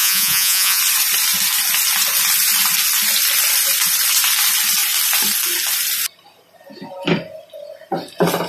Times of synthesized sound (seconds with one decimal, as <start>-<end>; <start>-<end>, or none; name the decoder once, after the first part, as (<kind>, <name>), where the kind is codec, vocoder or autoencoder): 0.0-0.8 (vocoder, Vocos)